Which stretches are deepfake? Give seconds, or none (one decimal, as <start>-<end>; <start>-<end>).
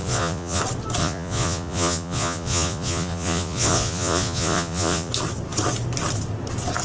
0.0-0.6; 1.0-5.1